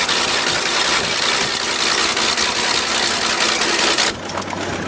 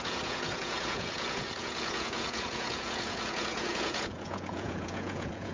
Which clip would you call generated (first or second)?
second